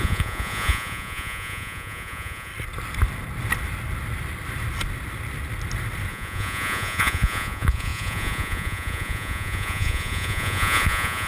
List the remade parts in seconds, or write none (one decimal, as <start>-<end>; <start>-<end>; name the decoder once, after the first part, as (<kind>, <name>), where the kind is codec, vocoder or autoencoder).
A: 0.0-2.5 (vocoder, Vocos); 6.1-11.3